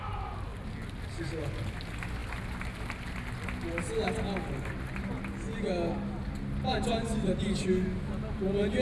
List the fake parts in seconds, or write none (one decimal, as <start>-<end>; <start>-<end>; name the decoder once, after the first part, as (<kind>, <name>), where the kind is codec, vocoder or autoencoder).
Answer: none